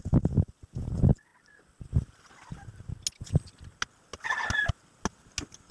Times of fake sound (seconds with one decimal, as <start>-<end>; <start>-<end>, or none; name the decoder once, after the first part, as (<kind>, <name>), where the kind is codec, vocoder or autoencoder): none